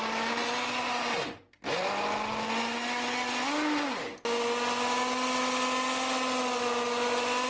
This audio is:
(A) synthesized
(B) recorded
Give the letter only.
B